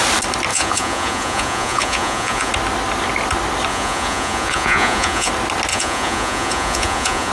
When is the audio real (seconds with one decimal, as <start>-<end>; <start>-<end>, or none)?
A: 0.0-0.5; 2.5-3.7; 5.3-5.7